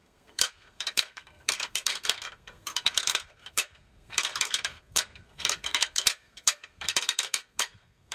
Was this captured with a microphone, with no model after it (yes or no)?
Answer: no